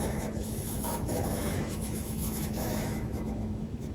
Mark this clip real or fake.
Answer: fake